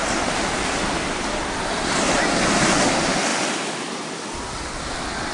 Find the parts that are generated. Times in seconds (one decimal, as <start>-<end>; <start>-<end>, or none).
none